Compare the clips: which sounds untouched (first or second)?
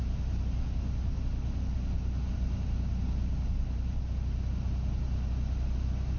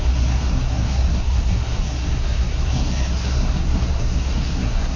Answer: first